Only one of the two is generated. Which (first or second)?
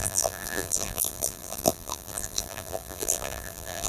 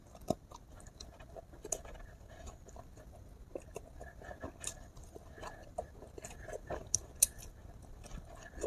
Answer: first